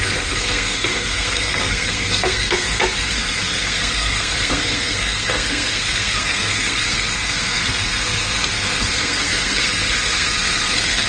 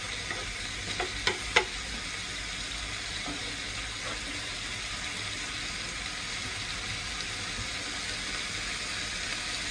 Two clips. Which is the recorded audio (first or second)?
second